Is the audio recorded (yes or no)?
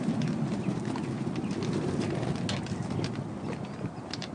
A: yes